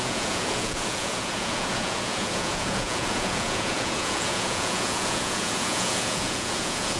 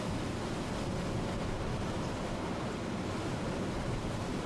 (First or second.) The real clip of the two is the second